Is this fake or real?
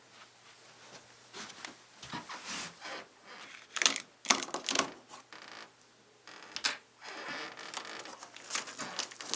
real